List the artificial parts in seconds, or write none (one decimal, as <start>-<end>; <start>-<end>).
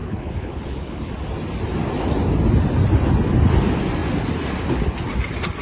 0.0-1.1